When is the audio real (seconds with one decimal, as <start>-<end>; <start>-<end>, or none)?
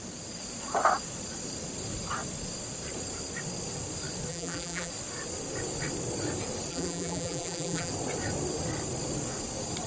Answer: 0.0-4.3; 4.9-6.7; 7.9-9.9